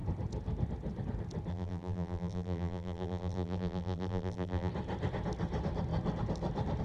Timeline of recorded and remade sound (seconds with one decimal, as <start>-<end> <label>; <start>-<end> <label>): 0.0-1.5 recorded; 1.5-4.7 remade; 4.7-6.8 recorded